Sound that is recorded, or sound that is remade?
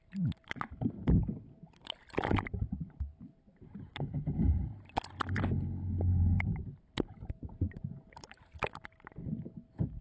recorded